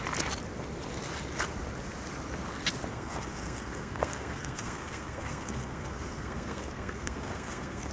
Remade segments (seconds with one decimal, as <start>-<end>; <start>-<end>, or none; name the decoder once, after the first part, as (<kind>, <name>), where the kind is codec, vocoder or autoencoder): 2.9-7.9 (codec, SNAC)